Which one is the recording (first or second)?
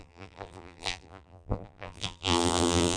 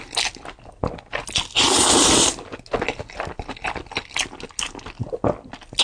second